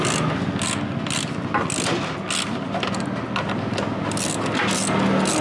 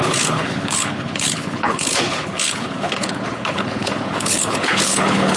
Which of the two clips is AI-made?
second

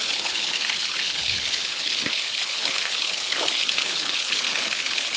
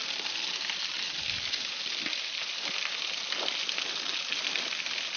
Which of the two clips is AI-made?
first